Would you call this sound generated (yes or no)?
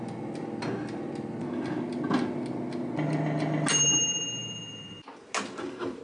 no